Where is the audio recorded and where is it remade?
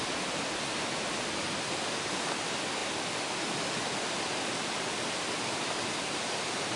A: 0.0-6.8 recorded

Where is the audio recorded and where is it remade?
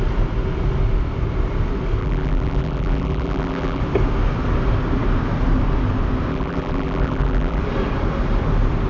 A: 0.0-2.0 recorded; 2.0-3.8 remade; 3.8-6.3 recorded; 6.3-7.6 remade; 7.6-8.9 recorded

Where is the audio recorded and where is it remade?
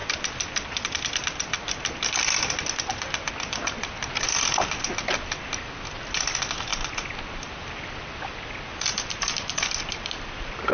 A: 0.0-10.7 recorded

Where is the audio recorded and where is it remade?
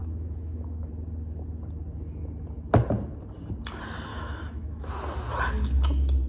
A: 0.0-0.9 remade; 0.9-4.1 recorded; 4.1-4.9 remade; 4.9-6.3 recorded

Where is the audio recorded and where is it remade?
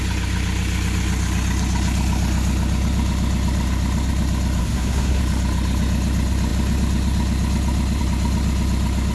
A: 0.0-4.6 recorded; 4.6-5.2 remade; 5.2-9.1 recorded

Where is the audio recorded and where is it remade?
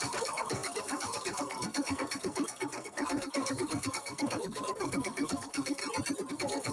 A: 0.0-5.8 remade; 5.8-6.3 recorded; 6.3-6.7 remade